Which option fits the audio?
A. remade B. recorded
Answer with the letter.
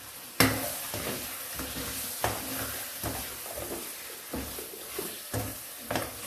B